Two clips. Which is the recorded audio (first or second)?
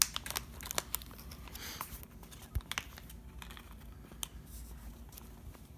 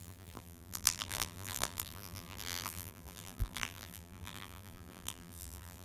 first